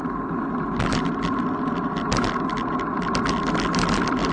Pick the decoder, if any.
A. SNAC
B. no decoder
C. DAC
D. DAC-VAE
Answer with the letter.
B